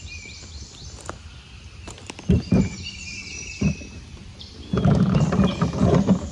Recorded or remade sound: remade